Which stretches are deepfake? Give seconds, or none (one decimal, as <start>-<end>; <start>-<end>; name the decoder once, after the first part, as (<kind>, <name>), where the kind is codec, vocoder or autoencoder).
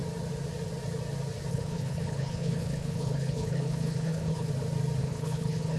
1.5-4.5 (codec, HILCodec); 5.0-5.8